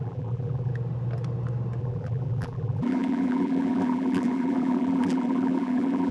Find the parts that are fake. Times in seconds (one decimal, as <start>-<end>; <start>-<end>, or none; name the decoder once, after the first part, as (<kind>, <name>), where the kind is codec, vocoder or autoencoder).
0.0-0.7 (vocoder, BigVGAN v2); 1.8-6.1